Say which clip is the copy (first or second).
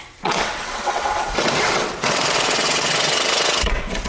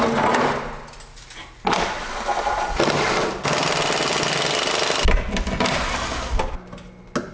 first